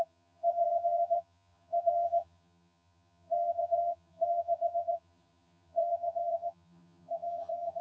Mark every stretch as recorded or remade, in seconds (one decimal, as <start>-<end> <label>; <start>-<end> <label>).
0.0-7.8 remade